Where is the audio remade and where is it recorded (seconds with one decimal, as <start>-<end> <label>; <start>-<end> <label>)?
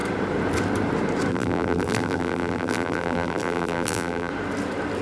0.0-1.3 recorded; 1.3-4.3 remade; 4.3-5.0 recorded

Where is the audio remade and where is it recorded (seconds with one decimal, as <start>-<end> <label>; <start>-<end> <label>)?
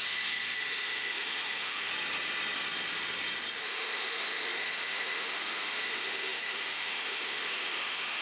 0.0-1.9 remade; 1.9-3.6 recorded; 3.6-8.2 remade